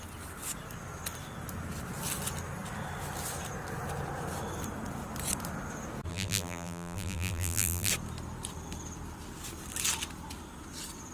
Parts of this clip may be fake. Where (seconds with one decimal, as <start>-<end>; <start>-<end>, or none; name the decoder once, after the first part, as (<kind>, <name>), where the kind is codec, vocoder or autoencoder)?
6.1-7.9 (vocoder, BigVGAN v2)